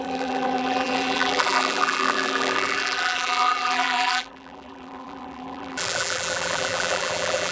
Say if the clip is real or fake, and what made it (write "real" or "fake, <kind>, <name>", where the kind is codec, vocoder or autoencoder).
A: fake, vocoder, BigVGAN v2